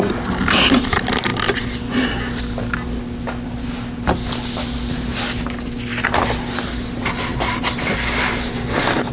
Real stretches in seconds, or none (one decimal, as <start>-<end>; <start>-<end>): 0.0-9.1